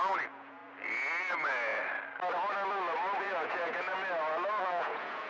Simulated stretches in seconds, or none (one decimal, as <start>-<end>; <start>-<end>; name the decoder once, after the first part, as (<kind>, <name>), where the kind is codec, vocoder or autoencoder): 0.0-0.6 (vocoder, Vocos); 1.2-1.7; 3.2-3.9; 4.6-5.3